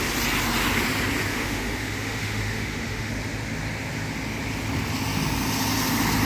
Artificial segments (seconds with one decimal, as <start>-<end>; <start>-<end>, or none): 1.3-3.1